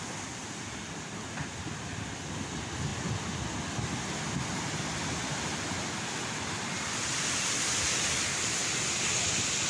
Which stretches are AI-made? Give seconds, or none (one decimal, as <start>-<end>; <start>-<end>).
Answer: none